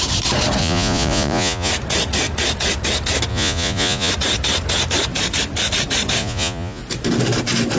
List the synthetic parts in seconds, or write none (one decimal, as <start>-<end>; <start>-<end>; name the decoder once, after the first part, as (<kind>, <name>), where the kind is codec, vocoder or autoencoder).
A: 0.6-1.7 (vocoder, Vocos); 3.3-4.1; 6.2-6.8